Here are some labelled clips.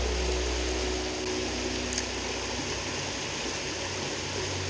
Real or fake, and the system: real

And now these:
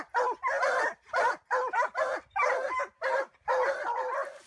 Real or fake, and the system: real